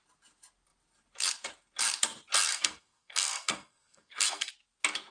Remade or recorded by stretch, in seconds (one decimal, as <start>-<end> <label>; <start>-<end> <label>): 0.0-2.5 recorded; 2.5-4.5 remade; 4.5-5.1 recorded